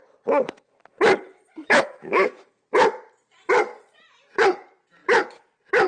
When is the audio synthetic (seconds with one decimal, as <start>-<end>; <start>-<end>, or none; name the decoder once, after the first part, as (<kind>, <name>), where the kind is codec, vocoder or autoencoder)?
1.6-2.5 (autoencoder, DAC-VAE)